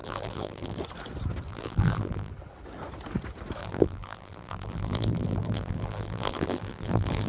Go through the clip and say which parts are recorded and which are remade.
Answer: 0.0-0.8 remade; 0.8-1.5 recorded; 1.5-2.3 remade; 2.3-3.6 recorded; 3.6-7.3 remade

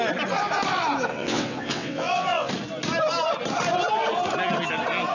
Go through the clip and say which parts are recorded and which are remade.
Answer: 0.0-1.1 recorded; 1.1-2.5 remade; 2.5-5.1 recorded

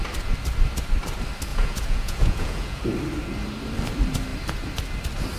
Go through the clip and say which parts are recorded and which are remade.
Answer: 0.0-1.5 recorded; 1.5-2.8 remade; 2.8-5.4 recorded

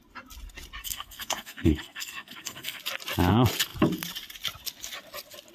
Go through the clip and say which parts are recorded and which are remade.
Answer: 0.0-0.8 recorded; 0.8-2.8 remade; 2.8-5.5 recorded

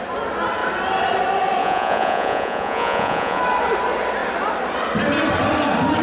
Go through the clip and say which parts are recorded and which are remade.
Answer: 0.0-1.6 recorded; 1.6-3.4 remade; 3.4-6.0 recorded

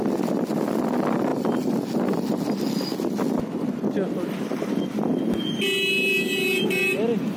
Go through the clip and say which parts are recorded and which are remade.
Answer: 0.0-7.4 recorded

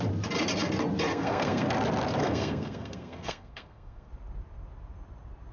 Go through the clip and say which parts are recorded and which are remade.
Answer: 0.0-1.1 recorded; 1.1-1.7 remade; 1.7-2.2 recorded; 2.2-4.1 remade; 4.1-5.5 recorded

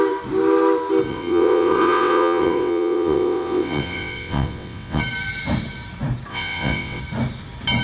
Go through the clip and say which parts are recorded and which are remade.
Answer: 0.0-1.1 recorded; 1.1-5.0 remade; 5.0-6.3 recorded; 6.3-7.0 remade; 7.0-7.8 recorded